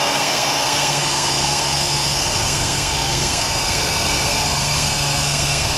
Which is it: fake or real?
fake